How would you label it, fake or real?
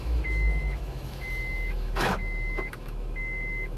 fake